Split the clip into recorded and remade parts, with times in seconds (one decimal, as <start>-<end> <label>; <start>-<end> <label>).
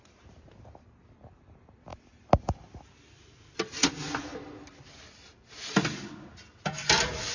0.0-7.3 recorded